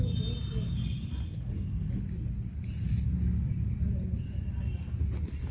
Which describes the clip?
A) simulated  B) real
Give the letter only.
B